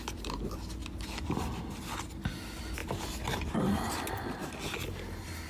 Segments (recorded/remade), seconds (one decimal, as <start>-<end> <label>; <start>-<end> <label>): 0.0-5.5 recorded